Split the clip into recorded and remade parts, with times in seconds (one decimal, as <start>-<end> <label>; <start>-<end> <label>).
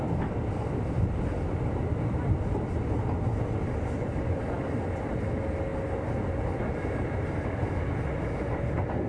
0.0-9.1 recorded